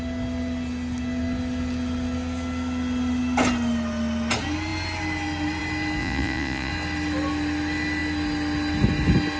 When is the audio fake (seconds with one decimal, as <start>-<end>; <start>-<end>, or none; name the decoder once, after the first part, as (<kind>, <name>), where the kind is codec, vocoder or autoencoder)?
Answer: 6.0-6.7 (vocoder, Vocos)